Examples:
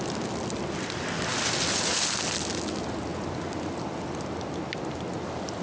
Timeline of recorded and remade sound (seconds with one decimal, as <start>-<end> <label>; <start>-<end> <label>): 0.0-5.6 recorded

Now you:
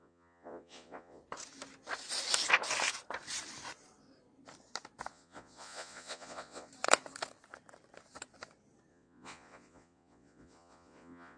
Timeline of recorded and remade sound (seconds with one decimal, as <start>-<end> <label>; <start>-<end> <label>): 0.0-1.2 remade; 1.2-5.1 recorded; 5.1-6.7 remade; 6.7-8.9 recorded; 8.9-11.4 remade

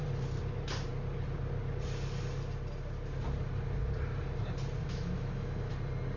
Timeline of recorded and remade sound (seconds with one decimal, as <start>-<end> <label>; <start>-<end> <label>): 0.0-4.8 recorded; 4.8-5.7 remade; 5.7-6.2 recorded

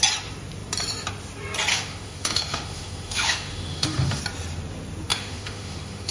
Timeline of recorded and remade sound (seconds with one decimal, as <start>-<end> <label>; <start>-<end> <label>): 0.0-1.7 recorded; 1.7-4.2 remade; 4.2-5.1 recorded; 5.1-6.1 remade

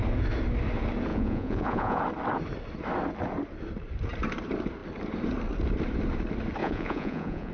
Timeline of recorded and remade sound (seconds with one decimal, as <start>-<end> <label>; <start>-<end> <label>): 0.0-1.1 recorded; 1.1-2.0 remade; 2.0-6.6 recorded; 6.6-7.5 remade